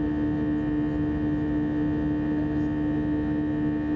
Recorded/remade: recorded